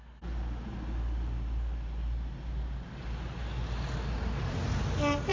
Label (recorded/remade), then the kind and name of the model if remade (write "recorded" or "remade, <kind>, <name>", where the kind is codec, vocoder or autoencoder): recorded